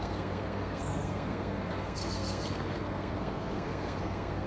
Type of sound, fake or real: fake